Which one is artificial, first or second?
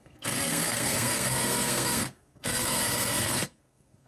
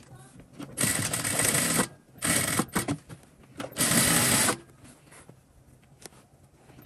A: first